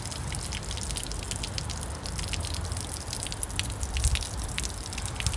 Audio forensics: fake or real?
real